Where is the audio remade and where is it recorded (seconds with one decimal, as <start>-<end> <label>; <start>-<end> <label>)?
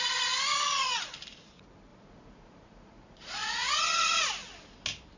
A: 0.0-1.9 recorded; 1.9-3.8 remade; 3.8-5.2 recorded